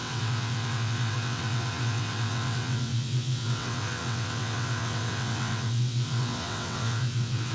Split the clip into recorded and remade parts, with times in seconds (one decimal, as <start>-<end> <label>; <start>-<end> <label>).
0.0-7.5 remade